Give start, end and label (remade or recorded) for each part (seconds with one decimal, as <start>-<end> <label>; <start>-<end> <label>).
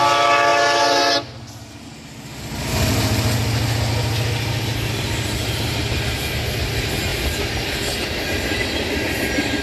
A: 0.0-9.6 recorded